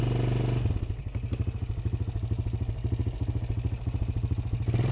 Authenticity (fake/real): real